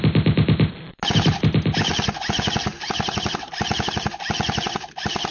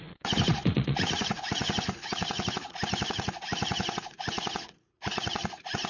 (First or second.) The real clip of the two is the first